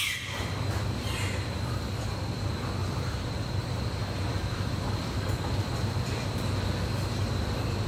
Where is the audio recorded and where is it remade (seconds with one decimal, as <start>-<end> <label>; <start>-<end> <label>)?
0.0-2.8 recorded; 2.8-3.8 remade; 3.8-4.3 recorded; 4.3-5.0 remade; 5.0-7.9 recorded